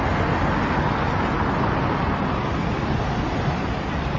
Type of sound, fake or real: real